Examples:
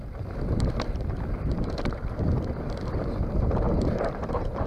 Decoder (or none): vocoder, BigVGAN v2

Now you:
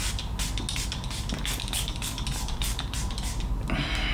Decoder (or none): none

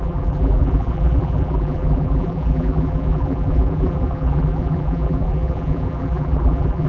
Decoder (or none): vocoder, BigVGAN v2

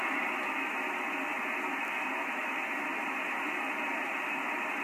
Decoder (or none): none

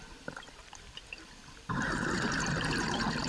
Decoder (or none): none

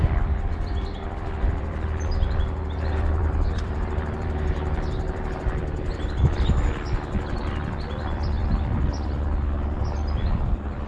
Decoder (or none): vocoder, BigVGAN v2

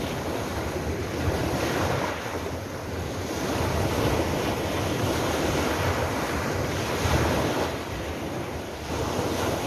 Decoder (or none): none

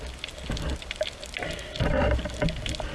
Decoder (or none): none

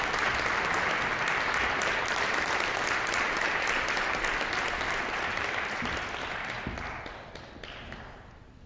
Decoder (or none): none